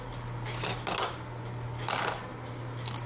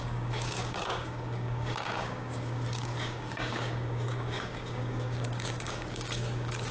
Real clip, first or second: first